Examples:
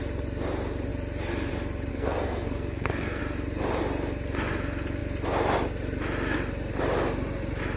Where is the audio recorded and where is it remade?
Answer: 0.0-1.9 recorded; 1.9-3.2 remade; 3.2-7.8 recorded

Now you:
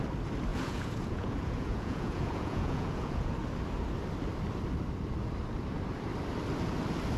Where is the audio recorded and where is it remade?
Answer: 0.0-0.5 recorded; 0.5-3.3 remade; 3.3-7.2 recorded

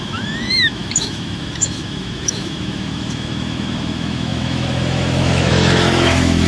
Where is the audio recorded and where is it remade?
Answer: 0.0-6.5 remade

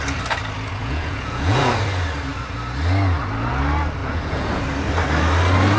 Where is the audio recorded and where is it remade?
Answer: 0.0-0.8 recorded; 0.8-1.7 remade; 1.7-4.0 recorded; 4.0-4.6 remade; 4.6-5.8 recorded

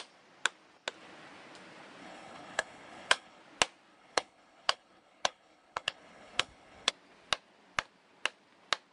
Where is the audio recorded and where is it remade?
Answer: 0.0-2.0 recorded; 2.0-3.4 remade; 3.4-3.9 recorded; 3.9-6.9 remade; 6.9-8.9 recorded